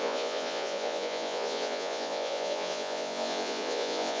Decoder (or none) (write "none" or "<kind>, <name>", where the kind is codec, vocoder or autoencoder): vocoder, Vocos